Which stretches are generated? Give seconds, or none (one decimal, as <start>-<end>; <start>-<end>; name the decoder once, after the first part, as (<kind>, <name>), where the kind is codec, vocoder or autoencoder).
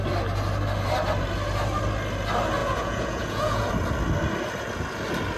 2.6-3.7 (vocoder, Vocos)